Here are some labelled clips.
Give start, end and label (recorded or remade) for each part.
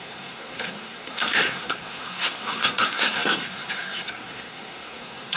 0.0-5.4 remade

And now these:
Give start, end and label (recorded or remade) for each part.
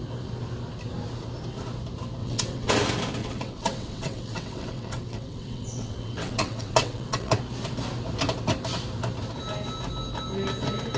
0.0-2.2 recorded; 2.2-2.7 remade; 2.7-3.2 recorded; 3.2-7.4 remade; 7.4-11.0 recorded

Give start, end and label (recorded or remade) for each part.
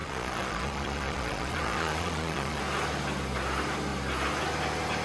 0.0-2.6 remade; 2.6-5.0 recorded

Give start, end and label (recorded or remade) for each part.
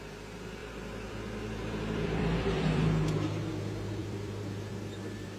0.0-0.6 recorded; 0.6-3.5 remade; 3.5-4.0 recorded; 4.0-4.7 remade; 4.7-5.4 recorded